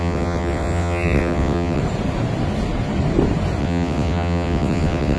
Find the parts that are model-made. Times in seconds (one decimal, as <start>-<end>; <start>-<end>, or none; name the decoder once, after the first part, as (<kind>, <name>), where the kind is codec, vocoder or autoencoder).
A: 0.0-1.8 (vocoder, WaveNeXt); 3.6-5.2